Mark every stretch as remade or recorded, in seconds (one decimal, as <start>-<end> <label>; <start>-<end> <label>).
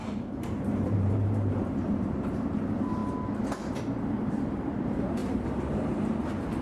0.0-3.0 remade; 3.0-3.8 recorded; 3.8-6.6 remade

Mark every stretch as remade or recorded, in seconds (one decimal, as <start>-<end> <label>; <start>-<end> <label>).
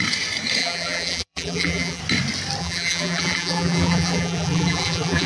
0.0-0.6 recorded; 0.6-2.0 remade; 2.0-2.6 recorded; 2.6-5.3 remade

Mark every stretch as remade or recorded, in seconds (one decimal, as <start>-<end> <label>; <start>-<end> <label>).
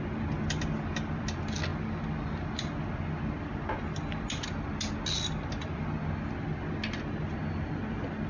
0.0-8.3 recorded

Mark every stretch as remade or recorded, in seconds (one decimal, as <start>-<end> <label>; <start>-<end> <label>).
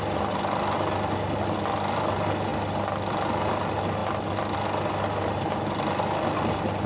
0.0-6.9 recorded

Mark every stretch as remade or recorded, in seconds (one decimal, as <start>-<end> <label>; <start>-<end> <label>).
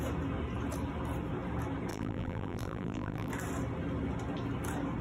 0.0-1.9 recorded; 1.9-3.3 remade; 3.3-5.0 recorded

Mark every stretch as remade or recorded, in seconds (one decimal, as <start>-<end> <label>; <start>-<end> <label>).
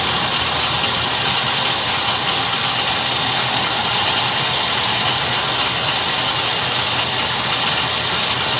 0.0-3.8 recorded; 3.8-4.4 remade; 4.4-8.6 recorded